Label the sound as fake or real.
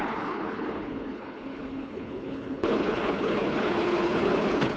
fake